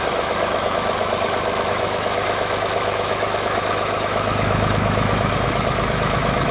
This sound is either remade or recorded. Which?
remade